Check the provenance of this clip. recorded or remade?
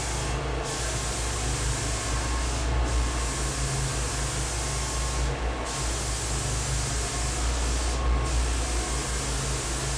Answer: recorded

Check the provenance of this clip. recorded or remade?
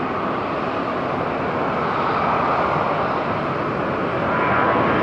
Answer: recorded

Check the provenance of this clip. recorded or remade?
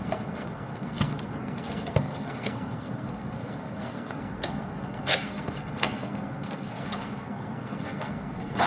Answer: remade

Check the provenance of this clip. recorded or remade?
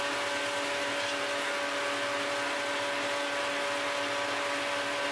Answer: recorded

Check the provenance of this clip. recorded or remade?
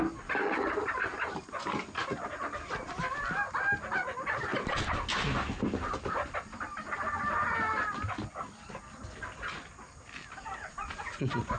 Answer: recorded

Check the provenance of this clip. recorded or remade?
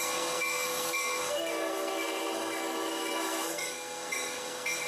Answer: remade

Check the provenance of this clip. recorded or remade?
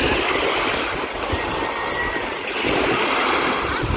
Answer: recorded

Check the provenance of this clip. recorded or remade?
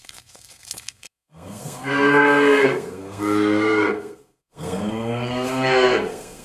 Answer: remade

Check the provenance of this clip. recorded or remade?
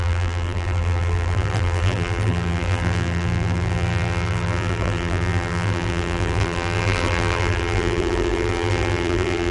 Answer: remade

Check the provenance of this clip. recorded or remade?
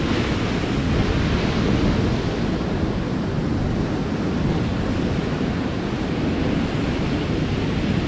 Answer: recorded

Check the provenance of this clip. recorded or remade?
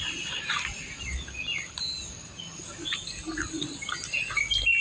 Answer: recorded